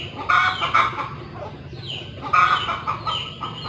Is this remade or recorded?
recorded